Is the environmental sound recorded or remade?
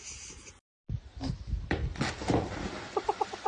recorded